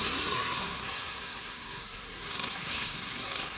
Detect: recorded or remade remade